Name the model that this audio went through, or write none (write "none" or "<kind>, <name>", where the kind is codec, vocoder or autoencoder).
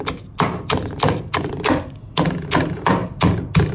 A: none